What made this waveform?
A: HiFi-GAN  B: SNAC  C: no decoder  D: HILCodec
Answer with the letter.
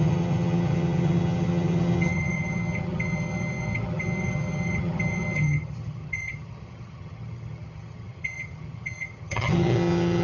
A